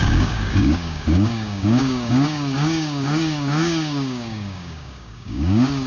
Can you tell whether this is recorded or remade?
remade